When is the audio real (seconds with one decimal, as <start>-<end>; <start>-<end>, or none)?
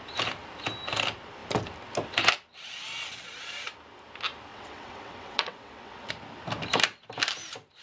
0.0-4.5; 6.1-7.8